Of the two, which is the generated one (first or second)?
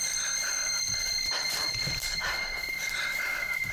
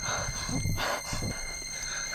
first